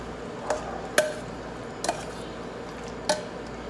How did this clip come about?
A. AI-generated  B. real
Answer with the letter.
B